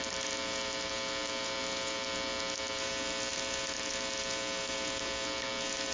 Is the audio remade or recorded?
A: recorded